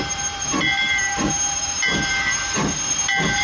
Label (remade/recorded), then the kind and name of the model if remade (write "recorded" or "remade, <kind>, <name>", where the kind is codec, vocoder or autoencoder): remade, vocoder, BigVGAN v2